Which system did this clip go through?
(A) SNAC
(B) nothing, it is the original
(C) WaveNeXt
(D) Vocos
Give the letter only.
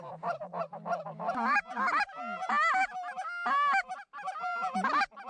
B